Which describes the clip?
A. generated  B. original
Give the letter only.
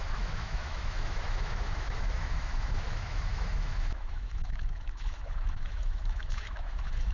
A